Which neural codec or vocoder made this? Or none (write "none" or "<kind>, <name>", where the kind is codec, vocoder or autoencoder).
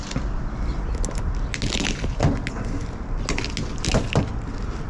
none